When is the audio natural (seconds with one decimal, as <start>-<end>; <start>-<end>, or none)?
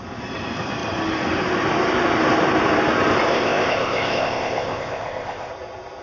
0.0-3.3; 5.5-6.0